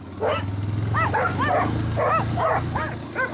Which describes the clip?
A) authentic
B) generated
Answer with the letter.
A